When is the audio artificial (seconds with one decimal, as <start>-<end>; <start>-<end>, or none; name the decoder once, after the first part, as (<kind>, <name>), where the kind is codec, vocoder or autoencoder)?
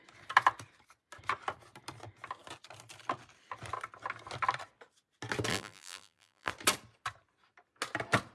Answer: 5.5-6.5 (vocoder, BigVGAN v2)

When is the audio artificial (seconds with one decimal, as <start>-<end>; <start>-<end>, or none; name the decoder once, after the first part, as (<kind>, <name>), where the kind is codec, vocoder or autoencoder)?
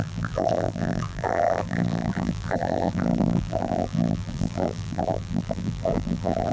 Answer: 0.0-6.5 (vocoder, BigVGAN v2)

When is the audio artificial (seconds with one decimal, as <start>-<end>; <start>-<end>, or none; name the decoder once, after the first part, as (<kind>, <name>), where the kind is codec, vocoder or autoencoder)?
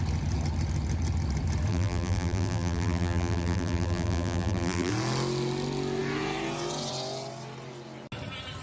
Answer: 1.7-4.9 (vocoder, BigVGAN v2)